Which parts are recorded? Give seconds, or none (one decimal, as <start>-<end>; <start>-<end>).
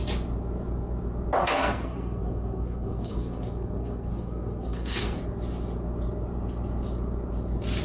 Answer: 0.0-1.4; 5.2-7.8